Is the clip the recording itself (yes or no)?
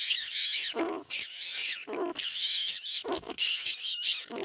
no